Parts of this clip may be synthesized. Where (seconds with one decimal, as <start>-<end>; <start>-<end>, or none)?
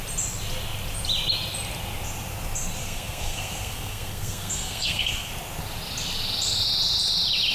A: 2.8-5.3